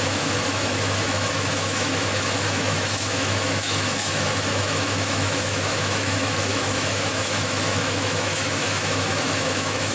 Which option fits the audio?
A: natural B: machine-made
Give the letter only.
B